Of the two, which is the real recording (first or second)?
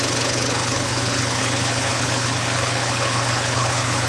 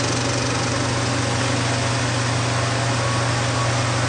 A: second